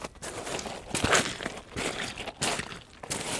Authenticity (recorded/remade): recorded